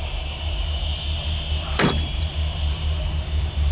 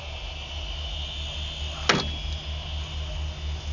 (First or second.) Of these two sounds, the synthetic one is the first